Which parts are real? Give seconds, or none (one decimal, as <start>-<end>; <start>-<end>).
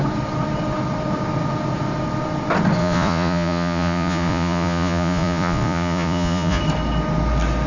0.0-2.8; 6.6-7.7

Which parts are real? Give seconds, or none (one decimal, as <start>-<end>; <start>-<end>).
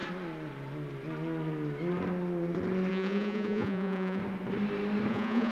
0.0-2.9; 4.2-5.1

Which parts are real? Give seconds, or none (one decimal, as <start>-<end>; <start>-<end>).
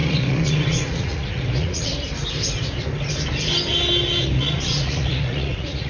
1.9-4.2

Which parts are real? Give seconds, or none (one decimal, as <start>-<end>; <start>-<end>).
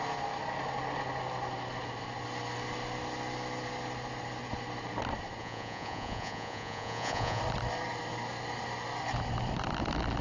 0.0-5.4; 7.4-10.2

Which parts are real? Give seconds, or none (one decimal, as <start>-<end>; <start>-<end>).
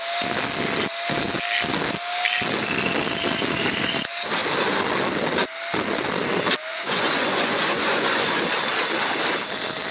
0.0-6.7; 8.4-9.9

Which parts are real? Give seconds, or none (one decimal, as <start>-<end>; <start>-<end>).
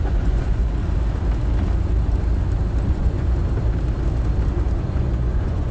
0.8-2.9; 3.4-4.8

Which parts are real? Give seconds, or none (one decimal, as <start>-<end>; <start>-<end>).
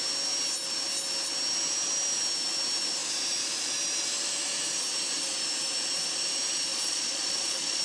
0.0-6.7